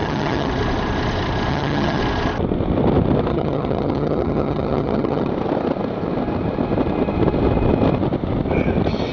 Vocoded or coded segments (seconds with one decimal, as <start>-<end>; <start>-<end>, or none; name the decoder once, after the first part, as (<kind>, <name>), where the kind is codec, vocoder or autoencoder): 0.0-0.5 (vocoder, HiFi-GAN); 1.5-2.0; 3.3-5.3